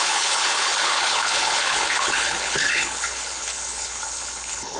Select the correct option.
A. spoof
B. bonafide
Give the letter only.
A